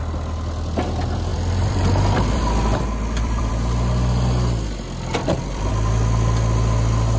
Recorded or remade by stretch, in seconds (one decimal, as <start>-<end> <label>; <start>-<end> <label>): 0.0-1.3 recorded; 1.3-3.5 remade; 3.5-5.2 recorded; 5.2-5.7 remade; 5.7-7.2 recorded